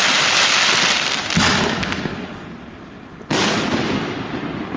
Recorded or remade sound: remade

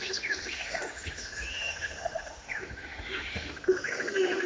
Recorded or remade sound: remade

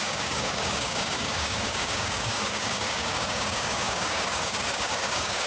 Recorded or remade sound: remade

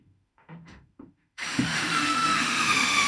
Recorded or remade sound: remade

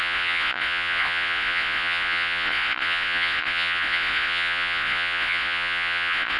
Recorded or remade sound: remade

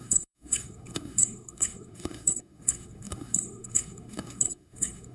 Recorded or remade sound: remade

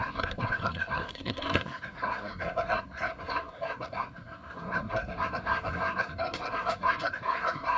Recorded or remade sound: remade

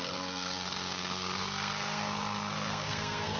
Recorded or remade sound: remade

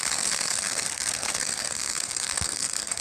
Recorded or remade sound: remade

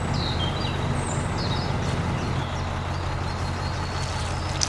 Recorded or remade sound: recorded